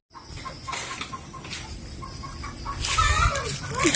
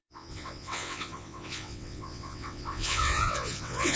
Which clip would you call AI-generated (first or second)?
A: second